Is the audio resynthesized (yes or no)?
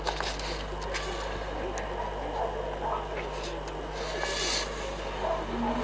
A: no